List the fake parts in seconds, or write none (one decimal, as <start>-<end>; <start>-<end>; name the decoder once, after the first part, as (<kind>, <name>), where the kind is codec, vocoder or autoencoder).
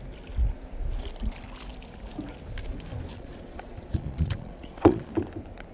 3.1-5.1 (vocoder, Vocos)